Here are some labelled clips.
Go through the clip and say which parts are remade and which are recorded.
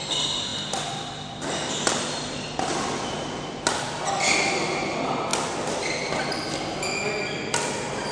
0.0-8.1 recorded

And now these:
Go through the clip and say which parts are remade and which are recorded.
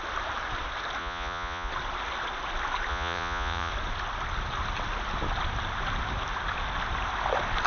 0.0-1.0 recorded; 1.0-1.7 remade; 1.7-2.9 recorded; 2.9-3.7 remade; 3.7-7.7 recorded